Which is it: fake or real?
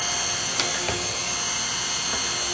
real